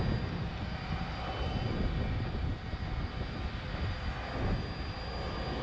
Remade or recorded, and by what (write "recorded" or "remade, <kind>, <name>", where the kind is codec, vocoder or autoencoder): recorded